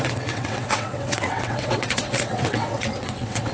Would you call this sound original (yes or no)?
no